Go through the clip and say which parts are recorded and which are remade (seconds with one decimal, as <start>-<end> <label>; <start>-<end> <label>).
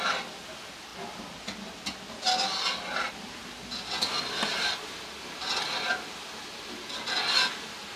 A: 0.0-8.0 recorded